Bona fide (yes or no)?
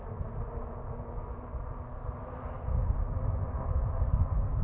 yes